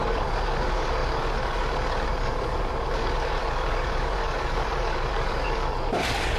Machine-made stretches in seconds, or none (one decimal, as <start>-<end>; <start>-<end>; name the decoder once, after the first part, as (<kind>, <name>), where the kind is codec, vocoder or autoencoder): 0.0-6.4 (codec, DAC)